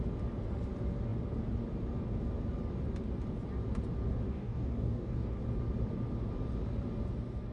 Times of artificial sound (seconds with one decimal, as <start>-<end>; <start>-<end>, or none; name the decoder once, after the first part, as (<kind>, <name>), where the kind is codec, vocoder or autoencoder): 4.3-5.4 (codec, DAC)